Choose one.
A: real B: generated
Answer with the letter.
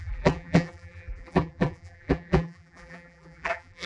B